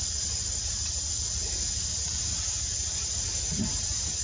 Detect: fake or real real